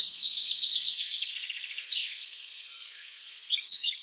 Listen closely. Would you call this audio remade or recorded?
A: remade